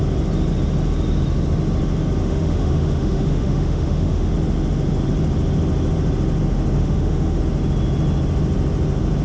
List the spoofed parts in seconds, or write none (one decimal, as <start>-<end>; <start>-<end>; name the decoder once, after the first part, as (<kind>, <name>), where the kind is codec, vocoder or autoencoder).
2.2-4.3 (autoencoder, DAC-VAE); 6.8-7.4